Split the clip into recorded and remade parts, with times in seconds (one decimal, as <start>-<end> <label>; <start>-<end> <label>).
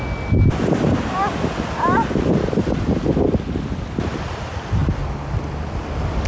0.0-6.3 recorded